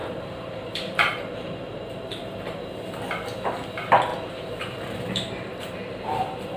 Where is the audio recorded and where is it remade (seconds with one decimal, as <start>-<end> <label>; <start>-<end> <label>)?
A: 0.0-2.6 remade; 2.6-4.1 recorded; 4.1-6.6 remade